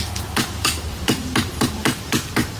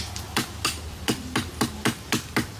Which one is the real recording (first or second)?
second